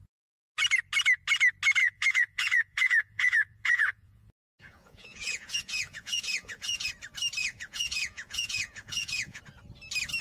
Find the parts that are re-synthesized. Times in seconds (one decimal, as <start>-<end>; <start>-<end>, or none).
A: 1.8-6.9; 7.4-9.4